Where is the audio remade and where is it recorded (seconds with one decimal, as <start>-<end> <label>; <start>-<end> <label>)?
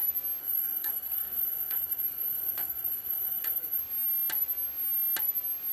0.0-0.4 recorded; 0.4-3.8 remade; 3.8-5.7 recorded